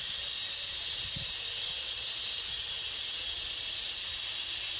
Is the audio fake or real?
real